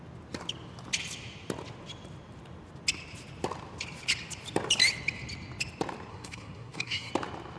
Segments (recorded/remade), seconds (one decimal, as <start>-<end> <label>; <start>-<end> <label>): 0.0-6.1 recorded; 6.1-7.1 remade; 7.1-7.6 recorded